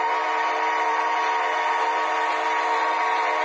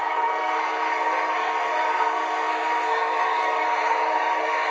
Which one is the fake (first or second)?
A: second